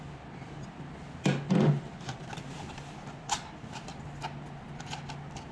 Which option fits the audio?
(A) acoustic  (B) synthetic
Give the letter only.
A